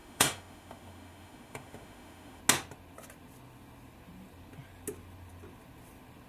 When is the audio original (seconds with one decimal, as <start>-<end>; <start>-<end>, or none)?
2.4-6.3